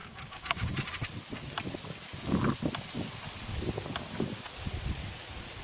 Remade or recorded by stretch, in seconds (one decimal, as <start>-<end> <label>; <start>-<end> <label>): 0.0-0.7 remade; 0.7-5.6 recorded

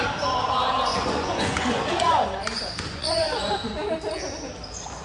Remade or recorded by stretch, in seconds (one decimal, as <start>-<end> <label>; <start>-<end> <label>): 0.0-0.9 recorded; 0.9-3.9 remade; 3.9-5.0 recorded